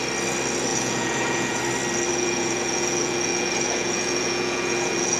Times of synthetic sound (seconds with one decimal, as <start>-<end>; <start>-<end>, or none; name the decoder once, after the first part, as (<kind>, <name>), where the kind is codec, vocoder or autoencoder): 0.7-1.6 (vocoder, Vocos); 2.1-5.2